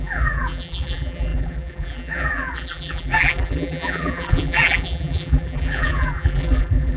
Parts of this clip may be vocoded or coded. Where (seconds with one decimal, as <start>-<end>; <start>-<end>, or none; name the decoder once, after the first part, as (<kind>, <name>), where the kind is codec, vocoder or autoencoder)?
0.0-7.0 (vocoder, BigVGAN v2)